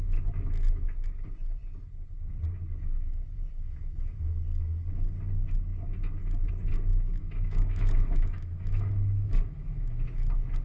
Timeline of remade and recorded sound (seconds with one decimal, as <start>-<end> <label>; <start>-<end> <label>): 0.0-6.9 recorded; 6.9-10.0 remade; 10.0-10.6 recorded